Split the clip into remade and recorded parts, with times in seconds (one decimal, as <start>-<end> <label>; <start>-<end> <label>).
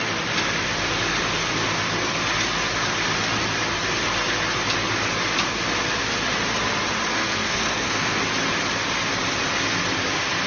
0.0-7.1 recorded; 7.1-8.2 remade; 8.2-10.5 recorded